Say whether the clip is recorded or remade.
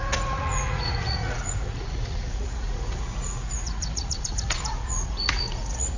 remade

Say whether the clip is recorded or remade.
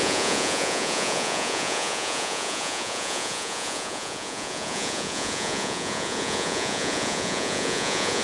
remade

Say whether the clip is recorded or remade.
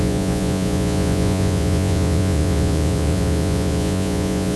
remade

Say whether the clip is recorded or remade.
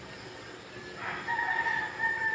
recorded